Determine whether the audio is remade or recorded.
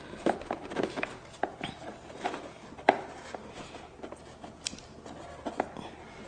recorded